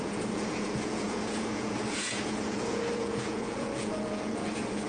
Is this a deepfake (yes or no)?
yes